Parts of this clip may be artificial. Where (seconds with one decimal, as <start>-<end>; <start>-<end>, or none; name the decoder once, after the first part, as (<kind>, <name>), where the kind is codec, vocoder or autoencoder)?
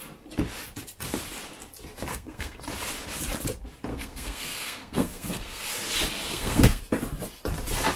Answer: 2.1-2.6 (codec, SNAC); 3.9-5.6; 6.3-6.8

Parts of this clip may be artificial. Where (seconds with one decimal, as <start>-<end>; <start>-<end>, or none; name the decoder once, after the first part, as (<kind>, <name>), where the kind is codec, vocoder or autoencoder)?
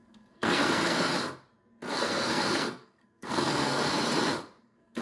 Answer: 0.0-1.1 (codec, SNAC); 1.9-3.8; 4.6-5.0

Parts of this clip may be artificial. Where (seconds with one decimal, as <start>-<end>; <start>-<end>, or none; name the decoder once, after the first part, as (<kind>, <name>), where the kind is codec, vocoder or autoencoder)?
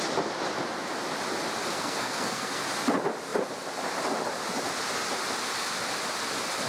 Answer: 1.7-2.6 (codec, SNAC)